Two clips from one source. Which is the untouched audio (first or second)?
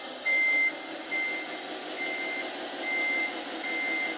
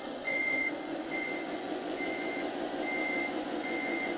first